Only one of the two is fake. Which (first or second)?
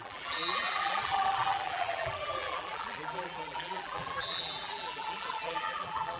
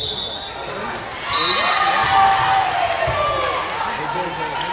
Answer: first